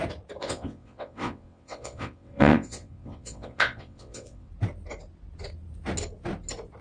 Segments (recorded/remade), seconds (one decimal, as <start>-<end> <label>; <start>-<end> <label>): 0.0-0.4 recorded; 0.4-4.5 remade; 4.5-6.8 recorded